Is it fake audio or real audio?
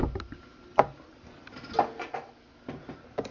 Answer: real